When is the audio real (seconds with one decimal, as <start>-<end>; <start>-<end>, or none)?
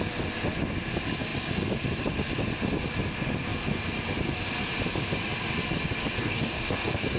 0.0-6.2